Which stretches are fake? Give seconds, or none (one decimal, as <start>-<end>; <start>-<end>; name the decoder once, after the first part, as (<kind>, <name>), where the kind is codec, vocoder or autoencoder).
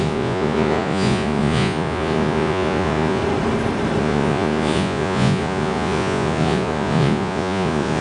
0.0-3.2 (vocoder, Vocos); 4.0-8.0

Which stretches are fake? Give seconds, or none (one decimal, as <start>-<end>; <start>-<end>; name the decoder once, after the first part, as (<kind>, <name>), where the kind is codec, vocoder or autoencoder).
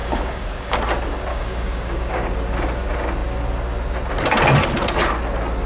0.0-0.8 (codec, DAC); 1.3-2.3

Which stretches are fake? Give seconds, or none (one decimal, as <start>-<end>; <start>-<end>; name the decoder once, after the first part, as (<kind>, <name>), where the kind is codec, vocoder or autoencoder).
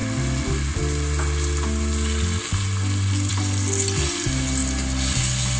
none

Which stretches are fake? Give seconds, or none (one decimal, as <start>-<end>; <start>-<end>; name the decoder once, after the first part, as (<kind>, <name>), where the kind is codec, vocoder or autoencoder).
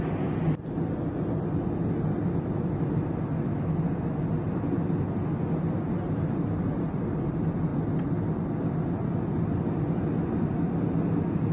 none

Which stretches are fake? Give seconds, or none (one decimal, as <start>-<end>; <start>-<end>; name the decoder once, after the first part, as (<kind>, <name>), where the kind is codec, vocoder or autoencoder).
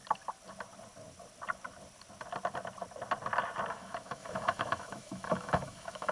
3.7-6.1 (autoencoder, DAC-VAE)